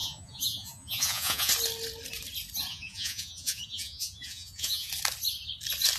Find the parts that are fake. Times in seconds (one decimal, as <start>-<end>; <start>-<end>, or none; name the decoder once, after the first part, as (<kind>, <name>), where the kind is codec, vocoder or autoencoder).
0.0-1.5 (vocoder, Vocos); 2.7-4.9